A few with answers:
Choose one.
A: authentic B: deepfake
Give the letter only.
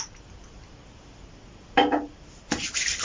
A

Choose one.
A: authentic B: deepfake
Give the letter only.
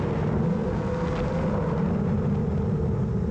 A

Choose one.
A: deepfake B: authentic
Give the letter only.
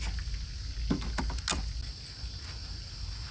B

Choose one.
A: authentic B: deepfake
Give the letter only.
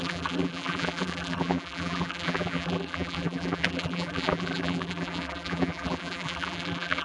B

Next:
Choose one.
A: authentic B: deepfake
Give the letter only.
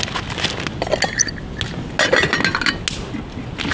A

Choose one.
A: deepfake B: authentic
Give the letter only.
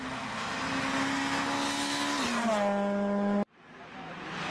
B